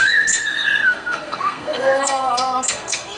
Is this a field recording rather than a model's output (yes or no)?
no